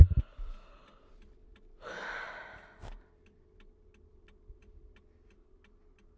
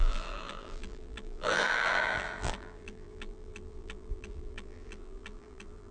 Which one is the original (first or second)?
first